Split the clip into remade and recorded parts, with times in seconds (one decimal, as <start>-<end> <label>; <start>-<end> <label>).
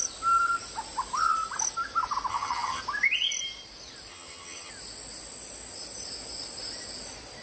0.0-2.3 recorded; 2.3-2.8 remade; 2.8-4.1 recorded; 4.1-4.7 remade; 4.7-7.4 recorded